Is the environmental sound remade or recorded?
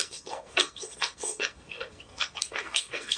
remade